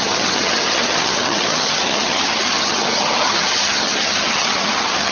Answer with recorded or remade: remade